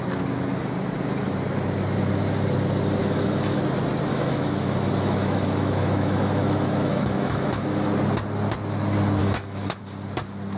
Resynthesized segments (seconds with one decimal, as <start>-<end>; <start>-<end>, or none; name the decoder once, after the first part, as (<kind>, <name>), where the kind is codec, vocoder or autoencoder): 3.0-3.6 (autoencoder, DAC-VAE); 4.1-7.9; 9.2-9.8